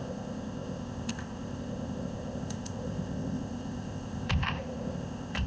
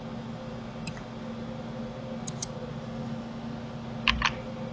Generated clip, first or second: first